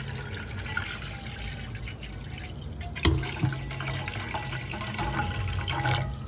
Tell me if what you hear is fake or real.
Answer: real